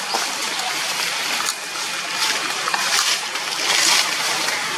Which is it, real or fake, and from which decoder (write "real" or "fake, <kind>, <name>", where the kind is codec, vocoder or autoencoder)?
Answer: fake, vocoder, BigVGAN v2